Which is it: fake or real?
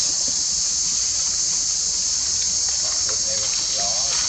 real